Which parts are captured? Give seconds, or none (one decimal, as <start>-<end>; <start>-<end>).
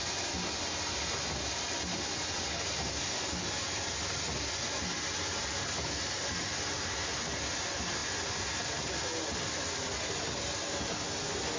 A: 0.0-5.4; 6.4-11.6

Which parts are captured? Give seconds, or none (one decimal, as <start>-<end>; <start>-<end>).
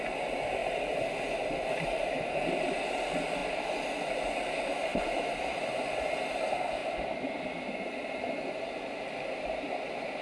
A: 0.0-0.6; 2.3-4.9; 6.0-6.8; 8.8-10.2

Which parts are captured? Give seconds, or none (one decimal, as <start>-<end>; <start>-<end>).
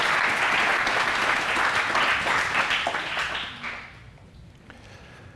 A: 0.0-5.4